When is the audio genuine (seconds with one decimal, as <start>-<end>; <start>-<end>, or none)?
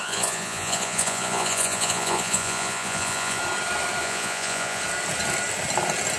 3.4-4.0; 4.8-6.2